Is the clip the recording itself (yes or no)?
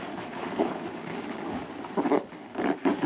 no